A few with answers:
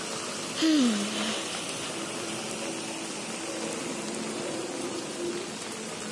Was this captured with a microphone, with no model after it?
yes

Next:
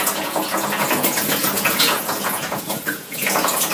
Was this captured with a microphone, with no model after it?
no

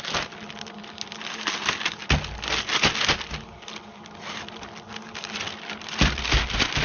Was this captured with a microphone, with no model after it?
yes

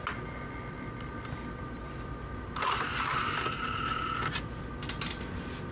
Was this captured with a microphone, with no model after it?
yes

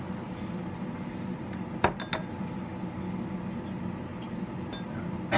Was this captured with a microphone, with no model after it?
yes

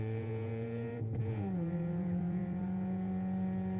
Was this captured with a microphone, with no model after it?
no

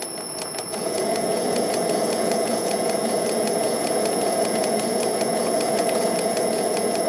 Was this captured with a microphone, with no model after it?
no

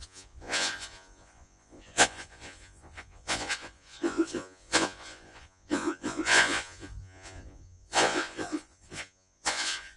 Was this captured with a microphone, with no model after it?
no